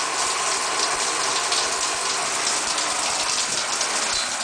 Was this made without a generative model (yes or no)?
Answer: yes